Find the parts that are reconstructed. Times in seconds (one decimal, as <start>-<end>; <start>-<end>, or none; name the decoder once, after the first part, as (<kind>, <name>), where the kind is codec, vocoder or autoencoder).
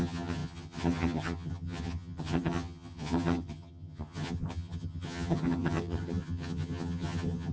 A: 0.0-7.5 (vocoder, HiFi-GAN)